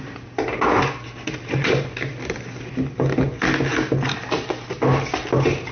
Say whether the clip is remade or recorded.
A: recorded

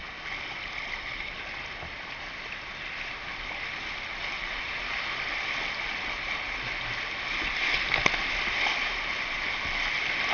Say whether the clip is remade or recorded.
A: recorded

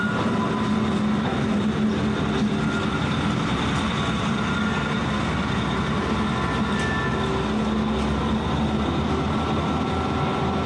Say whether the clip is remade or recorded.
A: recorded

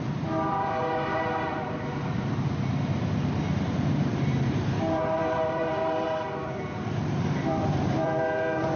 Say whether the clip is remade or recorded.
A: remade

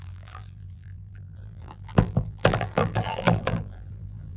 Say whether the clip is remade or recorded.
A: remade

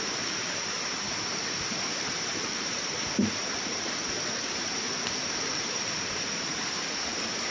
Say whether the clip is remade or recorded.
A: remade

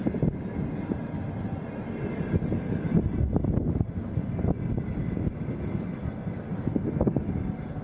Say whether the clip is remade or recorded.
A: recorded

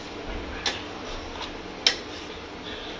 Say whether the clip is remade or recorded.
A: recorded